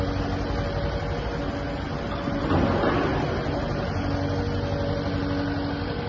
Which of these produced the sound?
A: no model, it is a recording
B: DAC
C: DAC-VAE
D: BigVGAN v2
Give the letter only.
A